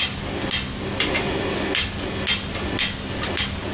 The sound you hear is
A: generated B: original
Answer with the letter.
B